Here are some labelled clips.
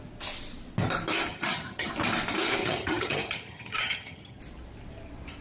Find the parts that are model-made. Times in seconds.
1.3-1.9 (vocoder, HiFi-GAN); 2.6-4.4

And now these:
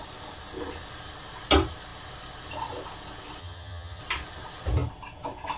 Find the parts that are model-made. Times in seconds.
3.4-4.0 (vocoder, HiFi-GAN)

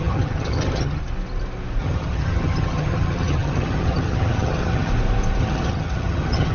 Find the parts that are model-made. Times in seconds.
0.0-1.0 (vocoder, HiFi-GAN); 1.8-4.9; 5.4-6.5

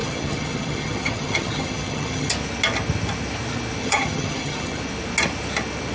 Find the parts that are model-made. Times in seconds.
0.0-2.3 (vocoder, HiFi-GAN); 3.8-4.8